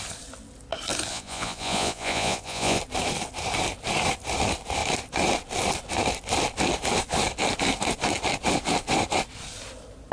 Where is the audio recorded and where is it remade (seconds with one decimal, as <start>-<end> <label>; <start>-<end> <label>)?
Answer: 0.0-1.1 recorded; 1.1-2.8 remade; 2.8-10.1 recorded